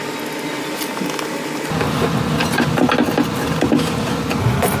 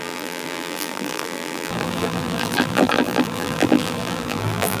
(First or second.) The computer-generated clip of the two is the second